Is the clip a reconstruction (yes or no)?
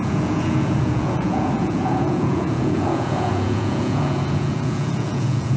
yes